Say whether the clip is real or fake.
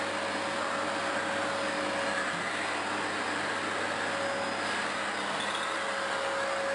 real